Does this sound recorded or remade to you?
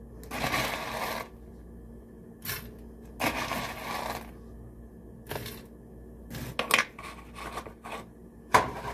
recorded